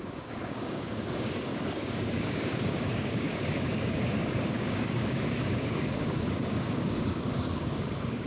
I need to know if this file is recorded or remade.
remade